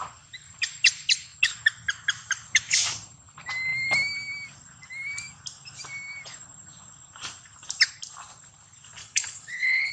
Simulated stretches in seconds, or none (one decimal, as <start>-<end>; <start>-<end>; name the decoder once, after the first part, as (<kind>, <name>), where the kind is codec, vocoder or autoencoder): 9.0-9.9 (codec, HILCodec)